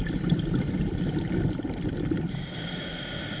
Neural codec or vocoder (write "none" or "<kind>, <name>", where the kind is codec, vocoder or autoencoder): none